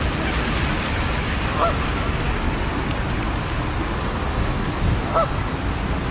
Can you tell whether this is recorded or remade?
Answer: recorded